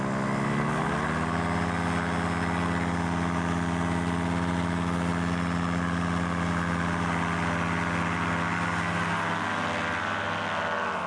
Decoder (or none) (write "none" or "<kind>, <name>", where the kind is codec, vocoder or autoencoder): none